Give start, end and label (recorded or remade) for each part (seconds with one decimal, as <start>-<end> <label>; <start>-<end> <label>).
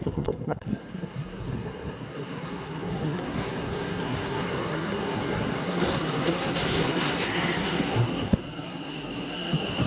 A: 0.0-9.9 remade